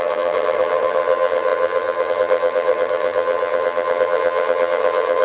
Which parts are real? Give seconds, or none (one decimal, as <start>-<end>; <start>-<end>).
none